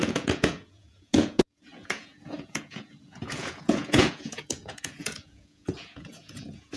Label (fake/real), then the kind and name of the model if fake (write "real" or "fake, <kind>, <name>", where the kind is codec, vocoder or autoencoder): fake, vocoder, Vocos